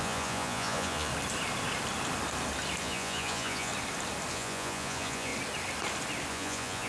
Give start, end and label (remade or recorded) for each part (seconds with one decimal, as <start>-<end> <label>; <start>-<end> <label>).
0.0-1.1 remade; 1.1-2.8 recorded; 2.8-3.7 remade; 3.7-4.3 recorded; 4.3-5.3 remade; 5.3-6.3 recorded; 6.3-6.9 remade